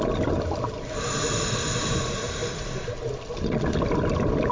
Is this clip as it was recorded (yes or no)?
yes